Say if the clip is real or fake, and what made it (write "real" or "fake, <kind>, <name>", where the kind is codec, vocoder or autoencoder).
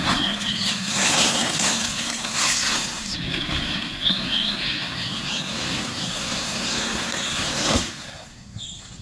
fake, codec, SNAC